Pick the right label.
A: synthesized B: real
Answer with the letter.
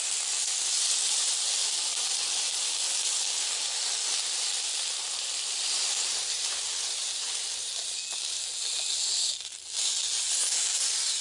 B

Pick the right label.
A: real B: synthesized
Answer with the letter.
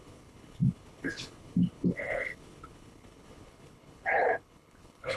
B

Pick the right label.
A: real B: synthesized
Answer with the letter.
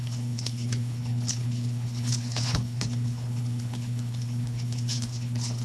B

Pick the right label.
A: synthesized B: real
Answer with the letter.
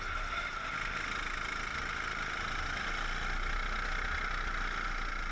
B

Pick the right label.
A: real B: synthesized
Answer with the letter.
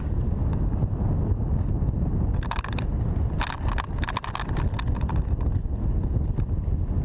A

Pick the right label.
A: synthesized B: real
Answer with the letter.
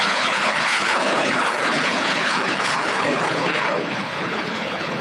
A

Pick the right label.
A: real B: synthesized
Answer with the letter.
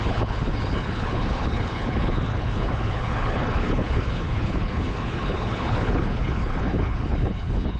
B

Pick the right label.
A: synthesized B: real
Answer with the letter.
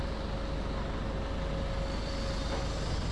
B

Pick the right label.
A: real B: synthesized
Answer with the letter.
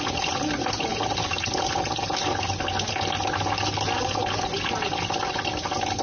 A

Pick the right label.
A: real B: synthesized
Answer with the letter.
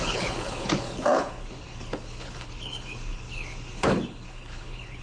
B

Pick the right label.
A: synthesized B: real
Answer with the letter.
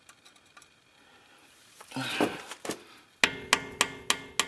B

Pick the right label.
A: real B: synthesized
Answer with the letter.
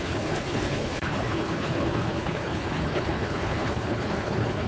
B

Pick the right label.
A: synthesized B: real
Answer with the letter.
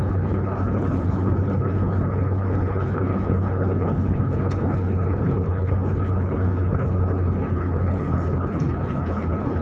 A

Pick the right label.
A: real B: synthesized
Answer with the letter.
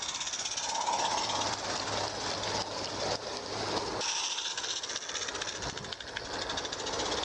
A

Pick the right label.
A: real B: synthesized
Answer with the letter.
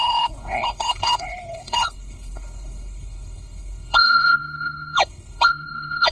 B